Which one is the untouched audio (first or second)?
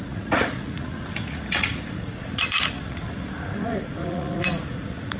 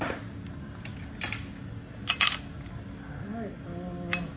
second